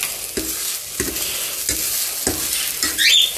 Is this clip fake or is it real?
real